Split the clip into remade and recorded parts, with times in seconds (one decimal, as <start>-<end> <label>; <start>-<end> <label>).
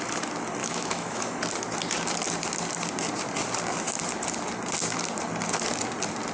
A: 0.0-0.6 recorded; 0.6-1.4 remade; 1.4-6.3 recorded